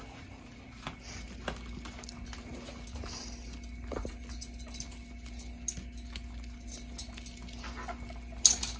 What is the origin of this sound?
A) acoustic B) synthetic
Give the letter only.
A